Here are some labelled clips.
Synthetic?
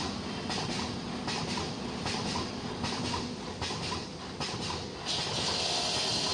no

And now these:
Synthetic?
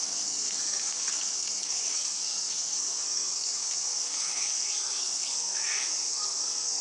yes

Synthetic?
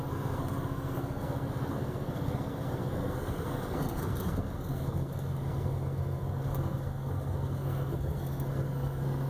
yes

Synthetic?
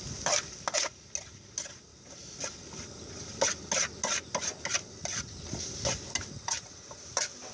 no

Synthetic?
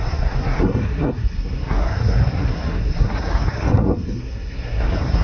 yes